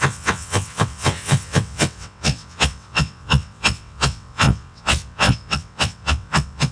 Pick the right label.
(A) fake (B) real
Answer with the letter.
A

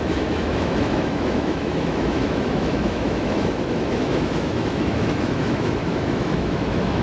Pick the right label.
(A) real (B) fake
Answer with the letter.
B